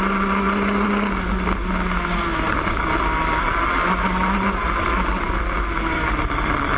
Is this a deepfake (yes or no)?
no